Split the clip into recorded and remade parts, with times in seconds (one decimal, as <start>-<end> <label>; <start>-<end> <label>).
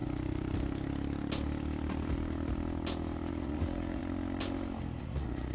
0.0-3.3 recorded; 3.3-4.0 remade; 4.0-5.0 recorded; 5.0-5.5 remade